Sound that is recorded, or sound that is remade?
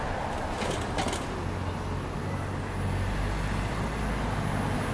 recorded